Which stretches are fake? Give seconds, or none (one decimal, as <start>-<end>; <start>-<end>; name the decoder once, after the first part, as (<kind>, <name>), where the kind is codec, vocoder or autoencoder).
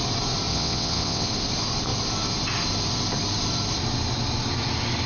0.5-1.3 (vocoder, WaveNeXt)